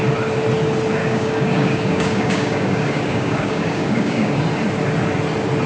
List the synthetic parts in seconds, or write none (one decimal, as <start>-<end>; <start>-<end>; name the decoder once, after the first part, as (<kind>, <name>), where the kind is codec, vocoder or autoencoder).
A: 1.0-4.4 (codec, DAC)